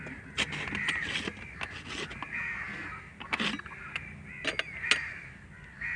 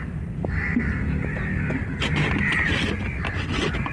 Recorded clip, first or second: first